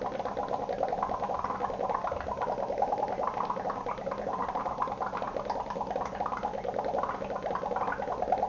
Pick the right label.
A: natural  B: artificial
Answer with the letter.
A